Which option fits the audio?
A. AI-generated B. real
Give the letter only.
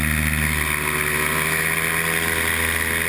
B